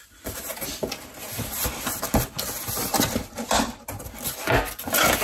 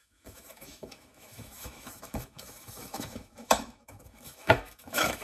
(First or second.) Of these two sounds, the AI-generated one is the second